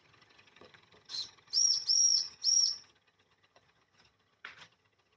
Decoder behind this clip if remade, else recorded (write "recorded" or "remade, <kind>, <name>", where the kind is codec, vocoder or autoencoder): remade, vocoder, HiFi-GAN